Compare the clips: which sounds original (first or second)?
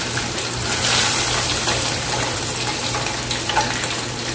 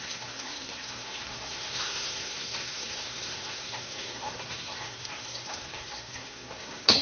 first